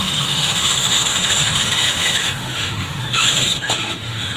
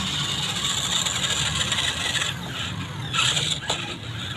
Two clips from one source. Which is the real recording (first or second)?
second